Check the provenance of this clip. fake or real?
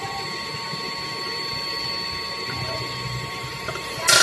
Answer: real